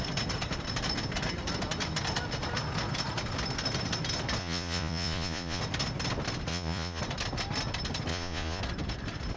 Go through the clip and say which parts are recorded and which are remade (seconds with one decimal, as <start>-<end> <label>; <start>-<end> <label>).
0.0-4.4 recorded; 4.4-5.6 remade; 5.6-6.5 recorded; 6.5-7.0 remade; 7.0-8.1 recorded; 8.1-8.6 remade; 8.6-9.4 recorded